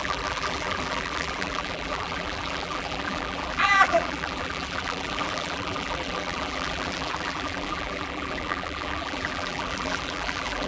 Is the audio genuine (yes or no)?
no